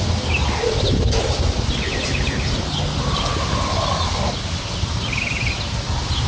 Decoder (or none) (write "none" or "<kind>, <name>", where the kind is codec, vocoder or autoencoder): none